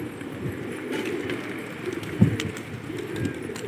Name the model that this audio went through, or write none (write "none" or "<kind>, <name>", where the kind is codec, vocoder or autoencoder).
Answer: none